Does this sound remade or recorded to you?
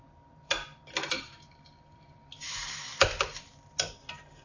remade